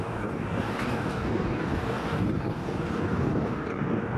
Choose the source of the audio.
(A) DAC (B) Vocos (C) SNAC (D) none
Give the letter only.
A